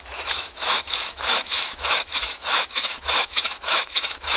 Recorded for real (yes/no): no